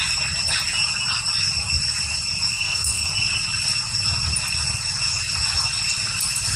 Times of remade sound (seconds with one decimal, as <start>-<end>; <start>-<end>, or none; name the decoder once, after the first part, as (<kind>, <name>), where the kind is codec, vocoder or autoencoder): 2.5-3.1 (codec, SNAC)